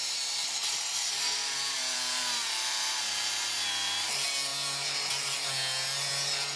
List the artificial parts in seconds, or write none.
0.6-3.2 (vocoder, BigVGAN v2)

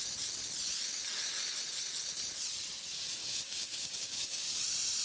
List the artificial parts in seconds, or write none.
3.2-4.6 (codec, DAC)

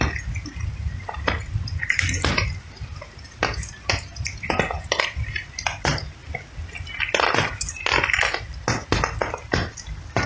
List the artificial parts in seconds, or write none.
0.4-5.5 (vocoder, BigVGAN v2)

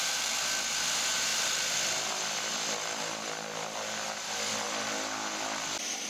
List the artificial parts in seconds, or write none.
0.0-0.7 (vocoder, BigVGAN v2); 1.3-1.9

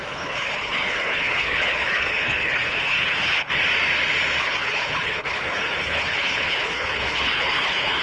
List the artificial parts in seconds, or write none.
0.0-3.6 (codec, HILCodec); 4.4-8.0